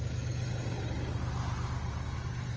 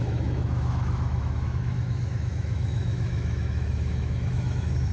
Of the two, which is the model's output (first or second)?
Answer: second